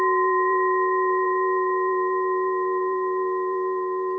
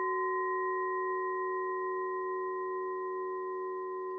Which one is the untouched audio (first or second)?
second